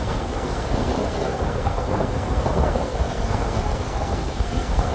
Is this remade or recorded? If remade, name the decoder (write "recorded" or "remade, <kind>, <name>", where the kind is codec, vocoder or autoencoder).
remade, codec, SNAC